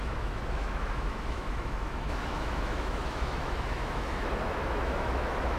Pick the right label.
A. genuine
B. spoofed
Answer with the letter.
B